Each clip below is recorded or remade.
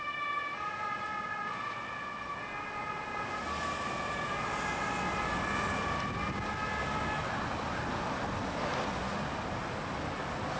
recorded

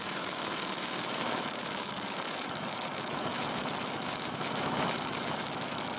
remade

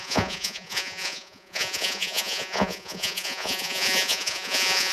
remade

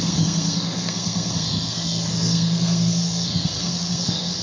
remade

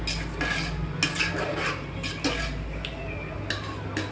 recorded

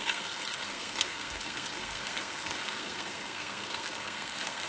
remade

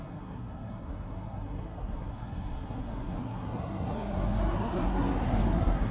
remade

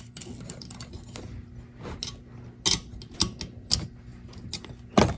recorded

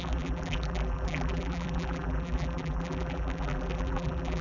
remade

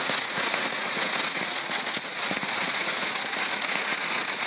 remade